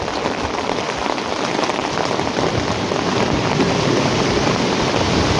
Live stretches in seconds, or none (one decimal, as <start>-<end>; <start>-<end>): 0.0-5.4